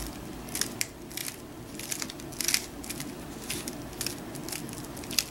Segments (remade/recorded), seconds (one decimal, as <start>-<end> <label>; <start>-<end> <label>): 0.0-5.3 recorded